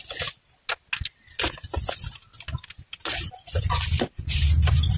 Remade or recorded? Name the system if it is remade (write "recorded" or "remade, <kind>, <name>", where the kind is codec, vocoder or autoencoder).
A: recorded